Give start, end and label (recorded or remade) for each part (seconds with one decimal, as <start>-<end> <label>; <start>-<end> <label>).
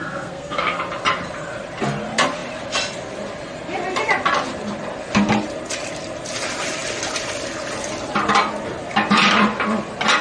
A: 0.0-0.8 remade; 0.8-10.2 recorded